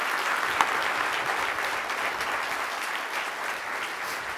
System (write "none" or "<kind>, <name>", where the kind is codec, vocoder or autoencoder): none